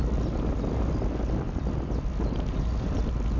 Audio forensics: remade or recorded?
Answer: recorded